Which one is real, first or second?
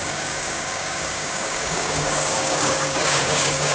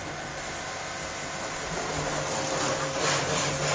second